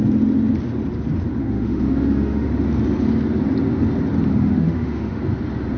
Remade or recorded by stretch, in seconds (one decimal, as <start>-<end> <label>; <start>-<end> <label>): 0.0-1.4 recorded; 1.4-2.5 remade; 2.5-4.3 recorded; 4.3-5.2 remade; 5.2-5.8 recorded